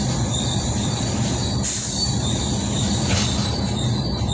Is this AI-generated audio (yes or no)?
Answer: no